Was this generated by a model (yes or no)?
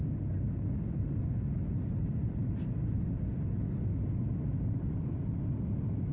no